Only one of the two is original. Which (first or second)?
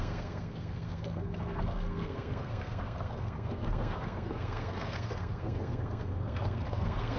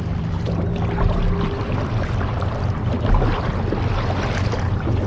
second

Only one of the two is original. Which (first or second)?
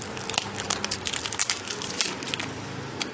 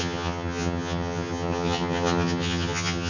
first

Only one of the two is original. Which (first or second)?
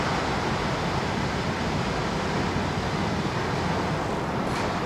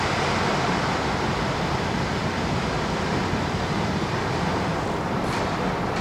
first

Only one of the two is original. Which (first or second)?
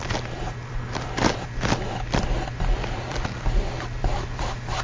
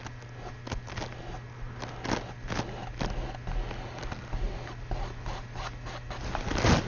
second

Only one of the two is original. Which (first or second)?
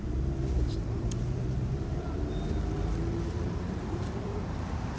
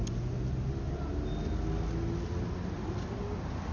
second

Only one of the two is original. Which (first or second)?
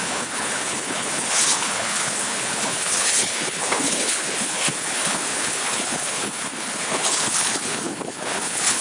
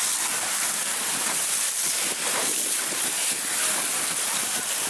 second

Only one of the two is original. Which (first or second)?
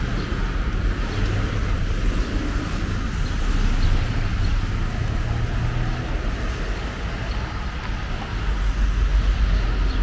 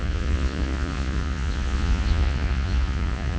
first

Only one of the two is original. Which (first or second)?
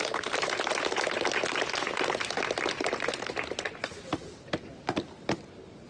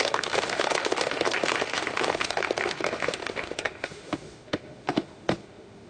first